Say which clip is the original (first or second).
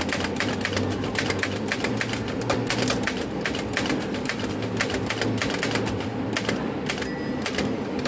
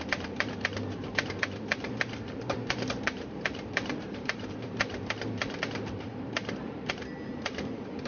first